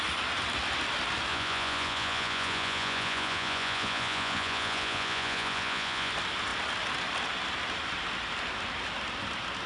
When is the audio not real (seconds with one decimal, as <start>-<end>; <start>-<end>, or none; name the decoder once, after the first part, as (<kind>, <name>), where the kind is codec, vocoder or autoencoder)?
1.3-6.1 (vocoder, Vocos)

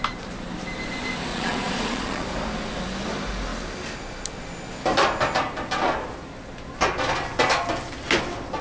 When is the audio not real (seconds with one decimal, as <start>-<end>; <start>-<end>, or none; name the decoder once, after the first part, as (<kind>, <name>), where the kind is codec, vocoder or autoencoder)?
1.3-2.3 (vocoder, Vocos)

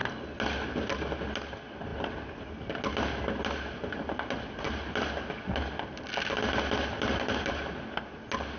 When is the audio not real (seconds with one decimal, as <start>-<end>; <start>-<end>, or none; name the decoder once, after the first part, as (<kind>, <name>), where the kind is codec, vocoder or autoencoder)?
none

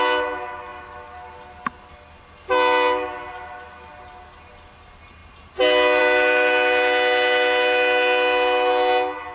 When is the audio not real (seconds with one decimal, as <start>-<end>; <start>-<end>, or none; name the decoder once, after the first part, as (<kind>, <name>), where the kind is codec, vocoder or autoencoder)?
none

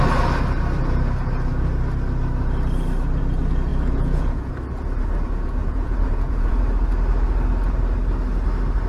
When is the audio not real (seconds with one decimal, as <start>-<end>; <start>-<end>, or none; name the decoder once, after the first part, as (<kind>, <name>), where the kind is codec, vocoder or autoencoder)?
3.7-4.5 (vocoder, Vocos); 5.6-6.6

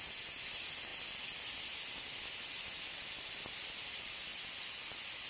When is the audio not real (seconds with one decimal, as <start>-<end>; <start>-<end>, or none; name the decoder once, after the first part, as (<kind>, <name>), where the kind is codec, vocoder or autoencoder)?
none

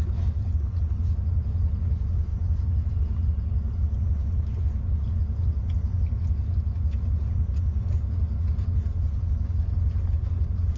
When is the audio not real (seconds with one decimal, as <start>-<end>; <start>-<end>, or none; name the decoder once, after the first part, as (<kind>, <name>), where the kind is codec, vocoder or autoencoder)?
none